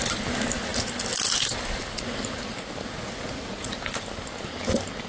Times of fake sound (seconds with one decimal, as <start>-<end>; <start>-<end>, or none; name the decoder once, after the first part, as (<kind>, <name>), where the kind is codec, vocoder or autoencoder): 3.0-3.8 (vocoder, Vocos)